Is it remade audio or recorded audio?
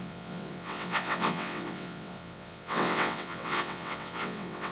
remade